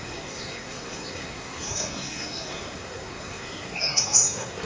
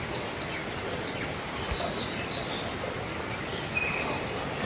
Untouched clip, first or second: second